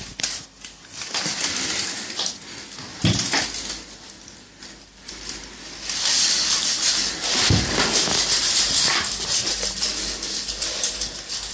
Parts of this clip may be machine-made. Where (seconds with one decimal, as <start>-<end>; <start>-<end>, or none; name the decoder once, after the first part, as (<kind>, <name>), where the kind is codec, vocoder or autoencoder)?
none